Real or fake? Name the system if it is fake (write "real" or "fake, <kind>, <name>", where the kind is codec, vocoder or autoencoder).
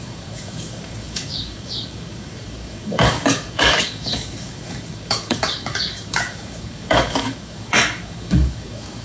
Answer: fake, codec, DAC